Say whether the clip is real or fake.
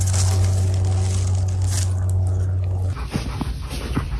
real